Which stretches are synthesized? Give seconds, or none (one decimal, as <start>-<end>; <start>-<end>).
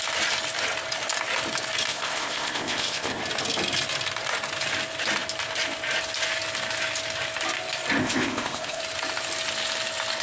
1.9-3.2; 8.0-8.8